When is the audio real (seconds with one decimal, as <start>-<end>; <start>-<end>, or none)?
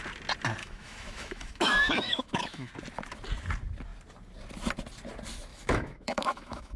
0.0-0.6; 2.7-5.5